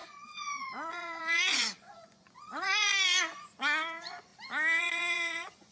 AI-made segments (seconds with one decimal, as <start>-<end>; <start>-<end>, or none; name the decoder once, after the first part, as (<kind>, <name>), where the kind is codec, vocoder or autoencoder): 0.0-4.3 (vocoder, Vocos); 4.8-5.7